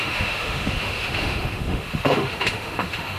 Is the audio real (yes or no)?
no